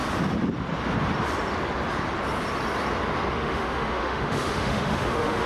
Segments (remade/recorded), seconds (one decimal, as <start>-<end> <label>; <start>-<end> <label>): 0.0-3.3 recorded; 3.3-5.5 remade